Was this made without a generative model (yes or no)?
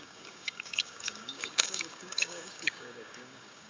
no